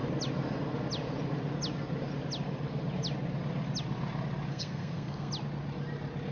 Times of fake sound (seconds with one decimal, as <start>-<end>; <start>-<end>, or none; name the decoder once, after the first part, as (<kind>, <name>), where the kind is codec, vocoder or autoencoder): 4.5-5.3 (codec, SNAC)